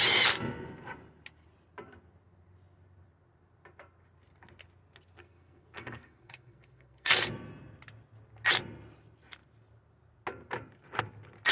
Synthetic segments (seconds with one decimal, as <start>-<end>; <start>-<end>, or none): 5.2-7.3